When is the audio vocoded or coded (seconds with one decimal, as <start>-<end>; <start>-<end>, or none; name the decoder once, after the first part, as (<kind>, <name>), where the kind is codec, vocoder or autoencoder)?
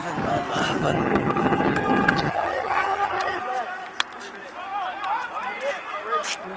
0.8-3.4 (vocoder, HiFi-GAN)